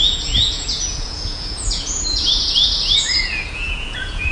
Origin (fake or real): fake